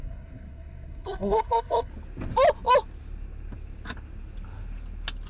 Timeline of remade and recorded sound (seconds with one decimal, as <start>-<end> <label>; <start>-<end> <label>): 0.0-1.9 remade; 1.9-5.3 recorded